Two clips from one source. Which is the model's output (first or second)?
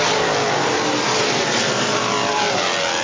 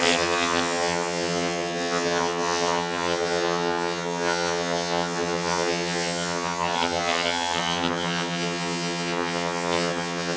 second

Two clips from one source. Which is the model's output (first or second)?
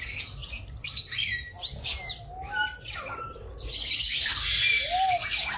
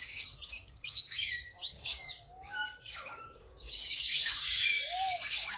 second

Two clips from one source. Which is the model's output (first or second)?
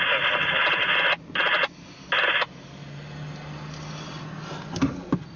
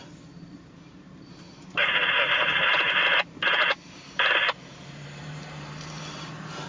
second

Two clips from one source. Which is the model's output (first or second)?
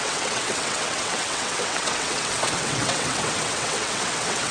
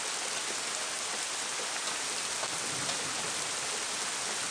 first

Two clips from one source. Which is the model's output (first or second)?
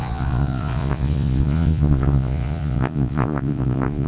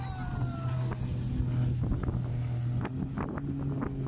first